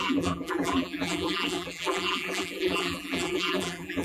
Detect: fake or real fake